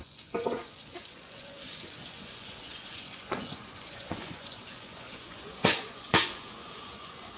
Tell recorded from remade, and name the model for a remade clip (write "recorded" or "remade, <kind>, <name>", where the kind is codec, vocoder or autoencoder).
remade, vocoder, Vocos